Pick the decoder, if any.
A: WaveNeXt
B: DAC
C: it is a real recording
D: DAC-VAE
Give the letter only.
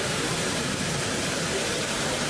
C